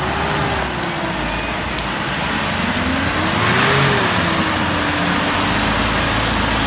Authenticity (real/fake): real